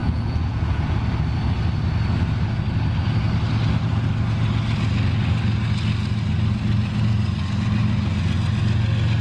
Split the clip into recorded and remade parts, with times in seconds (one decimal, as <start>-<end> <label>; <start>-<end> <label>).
0.0-1.0 remade; 1.0-9.2 recorded